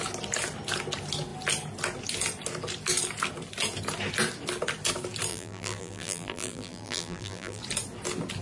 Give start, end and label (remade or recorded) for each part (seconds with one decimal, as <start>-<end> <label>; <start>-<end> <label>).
0.0-5.3 recorded; 5.3-7.6 remade; 7.6-8.4 recorded

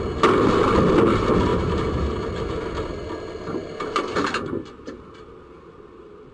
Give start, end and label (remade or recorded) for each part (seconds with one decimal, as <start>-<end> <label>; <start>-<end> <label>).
0.0-1.5 recorded; 1.5-2.6 remade; 2.6-3.6 recorded; 3.6-5.4 remade; 5.4-6.3 recorded

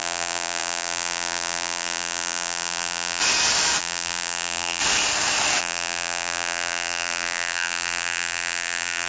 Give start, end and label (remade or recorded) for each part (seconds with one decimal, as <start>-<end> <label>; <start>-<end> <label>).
0.0-3.2 remade; 3.2-3.8 recorded; 3.8-4.8 remade; 4.8-5.6 recorded; 5.6-9.1 remade

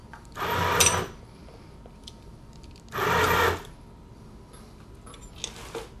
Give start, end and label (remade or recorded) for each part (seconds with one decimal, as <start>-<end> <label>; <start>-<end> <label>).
0.0-2.7 remade; 2.7-6.0 recorded

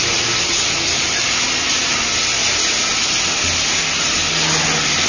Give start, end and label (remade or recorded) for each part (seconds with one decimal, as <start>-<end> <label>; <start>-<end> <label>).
0.0-5.1 recorded